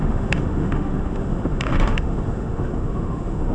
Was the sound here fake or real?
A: fake